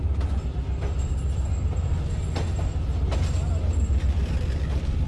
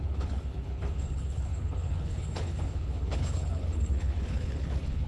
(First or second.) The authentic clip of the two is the first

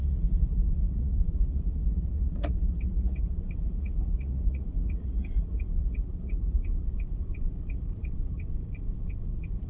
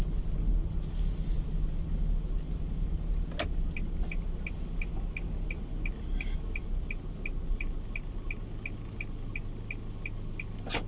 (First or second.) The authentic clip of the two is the second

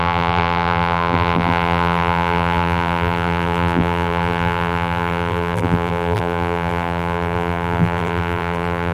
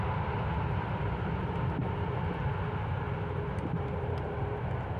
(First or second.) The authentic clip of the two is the second